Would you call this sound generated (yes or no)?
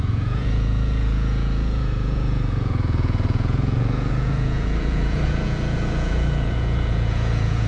yes